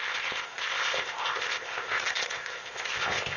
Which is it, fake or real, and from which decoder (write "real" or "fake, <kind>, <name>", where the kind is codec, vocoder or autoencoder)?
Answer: fake, codec, ZipCodec